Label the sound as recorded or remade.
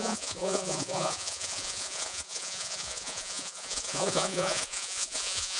remade